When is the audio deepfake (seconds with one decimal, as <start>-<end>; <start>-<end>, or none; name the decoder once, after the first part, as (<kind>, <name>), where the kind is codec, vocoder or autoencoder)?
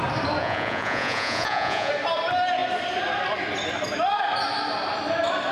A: 0.4-1.9 (vocoder, Vocos)